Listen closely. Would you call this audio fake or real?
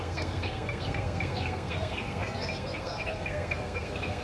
fake